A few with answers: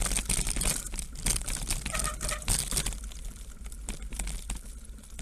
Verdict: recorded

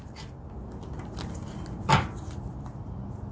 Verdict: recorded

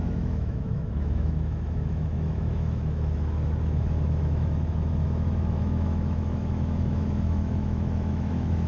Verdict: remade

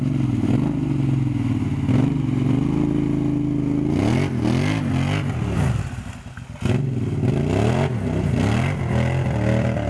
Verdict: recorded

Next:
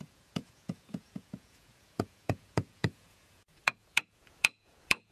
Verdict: remade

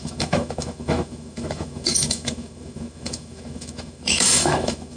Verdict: remade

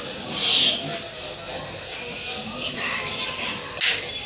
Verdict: recorded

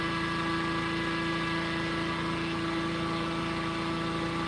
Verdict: recorded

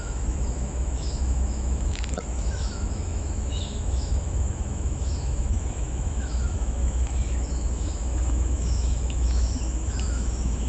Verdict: remade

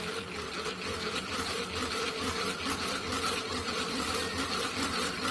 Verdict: remade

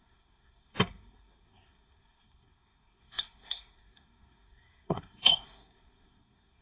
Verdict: remade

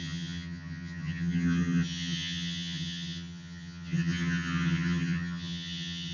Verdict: remade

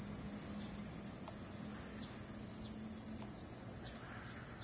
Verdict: recorded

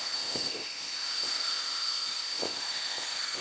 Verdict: remade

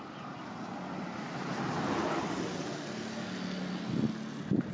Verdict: recorded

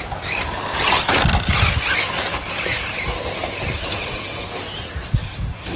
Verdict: recorded